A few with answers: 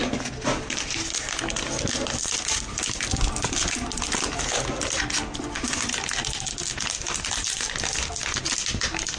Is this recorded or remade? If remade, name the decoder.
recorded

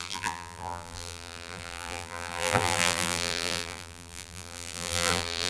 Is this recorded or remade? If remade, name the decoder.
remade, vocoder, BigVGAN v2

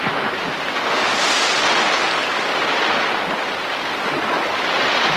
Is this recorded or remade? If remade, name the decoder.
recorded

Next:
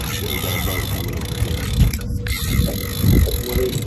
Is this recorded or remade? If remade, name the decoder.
recorded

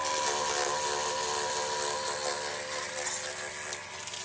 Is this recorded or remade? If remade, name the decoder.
recorded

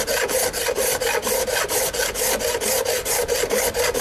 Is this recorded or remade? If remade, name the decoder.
recorded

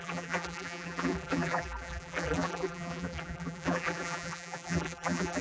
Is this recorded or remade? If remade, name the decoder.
remade, vocoder, BigVGAN v2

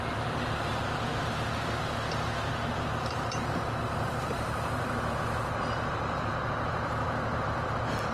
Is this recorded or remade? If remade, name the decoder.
remade, vocoder, BigVGAN v2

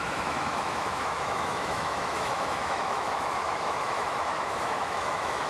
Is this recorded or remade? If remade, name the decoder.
remade, autoencoder, DAC-VAE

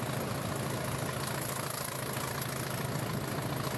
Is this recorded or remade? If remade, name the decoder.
recorded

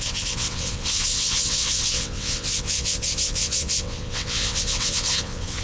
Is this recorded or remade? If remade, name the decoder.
remade, vocoder, WaveNeXt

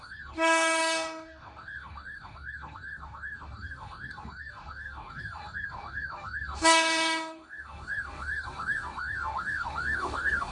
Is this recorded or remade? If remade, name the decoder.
remade, codec, DAC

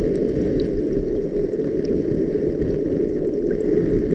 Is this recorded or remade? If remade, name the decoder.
recorded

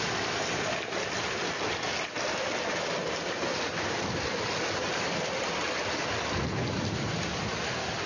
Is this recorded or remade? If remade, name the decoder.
recorded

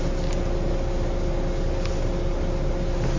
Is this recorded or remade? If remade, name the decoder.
recorded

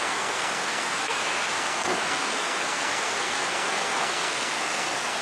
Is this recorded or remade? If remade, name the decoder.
remade, codec, SNAC